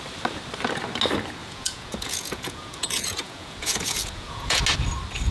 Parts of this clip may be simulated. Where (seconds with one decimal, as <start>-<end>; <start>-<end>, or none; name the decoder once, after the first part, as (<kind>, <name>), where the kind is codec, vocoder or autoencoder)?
1.4-4.6 (vocoder, Vocos)